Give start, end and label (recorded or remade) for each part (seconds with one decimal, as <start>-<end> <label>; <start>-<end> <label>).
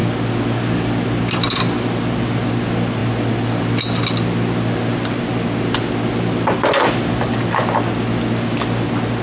0.0-9.2 recorded